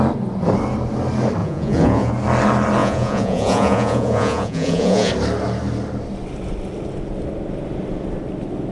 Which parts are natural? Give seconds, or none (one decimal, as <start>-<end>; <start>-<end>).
0.0-1.4; 2.1-2.8; 5.1-8.7